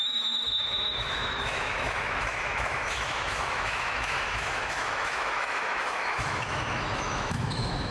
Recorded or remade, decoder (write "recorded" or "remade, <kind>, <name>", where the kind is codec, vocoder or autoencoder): remade, autoencoder, DAC-VAE